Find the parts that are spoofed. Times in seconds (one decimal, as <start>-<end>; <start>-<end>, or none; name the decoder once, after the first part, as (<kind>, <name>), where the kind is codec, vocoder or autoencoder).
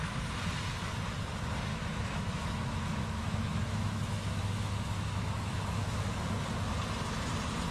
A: 1.7-6.3 (autoencoder, DAC-VAE)